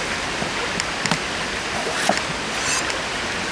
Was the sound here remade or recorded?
recorded